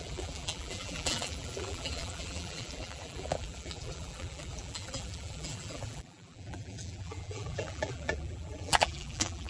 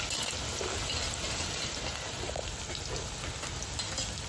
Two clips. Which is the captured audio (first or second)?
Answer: second